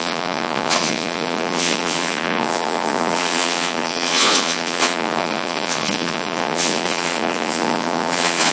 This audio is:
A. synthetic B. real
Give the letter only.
A